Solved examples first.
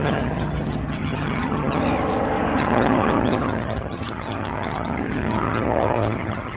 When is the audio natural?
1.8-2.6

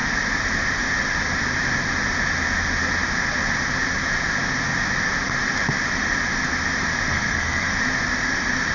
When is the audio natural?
0.0-7.1; 7.7-8.7

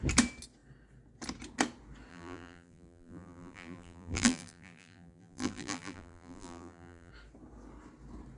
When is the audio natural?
0.0-2.1; 7.1-8.4

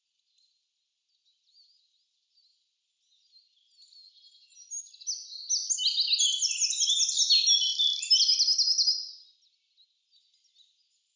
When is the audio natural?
0.0-11.2

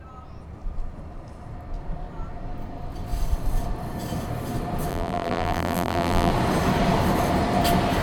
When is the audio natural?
0.0-4.9; 6.3-8.0

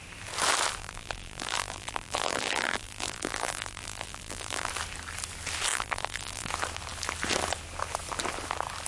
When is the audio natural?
0.0-0.8; 4.7-5.7; 6.5-8.9

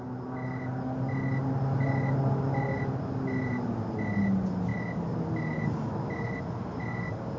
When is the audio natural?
0.0-7.4